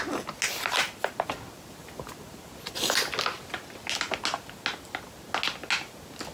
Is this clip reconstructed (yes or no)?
no